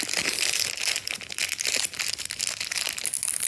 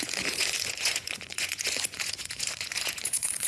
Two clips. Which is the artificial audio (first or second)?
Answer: second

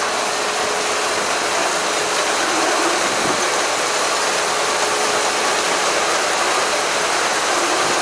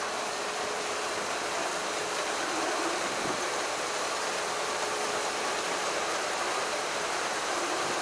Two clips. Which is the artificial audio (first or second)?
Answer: second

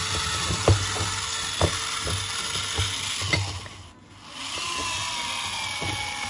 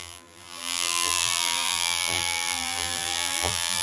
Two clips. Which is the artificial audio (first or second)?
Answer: second